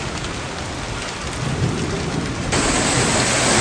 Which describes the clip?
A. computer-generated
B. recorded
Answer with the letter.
B